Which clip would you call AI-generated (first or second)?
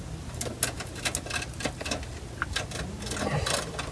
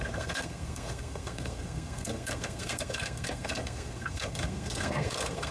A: second